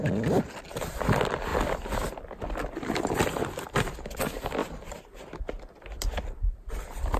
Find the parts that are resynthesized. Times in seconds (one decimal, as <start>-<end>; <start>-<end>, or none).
1.5-3.9; 4.6-5.5